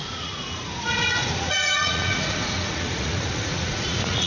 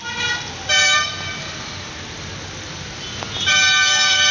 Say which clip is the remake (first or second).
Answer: first